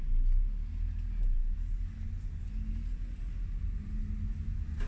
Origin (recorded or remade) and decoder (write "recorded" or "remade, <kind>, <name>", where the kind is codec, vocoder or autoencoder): recorded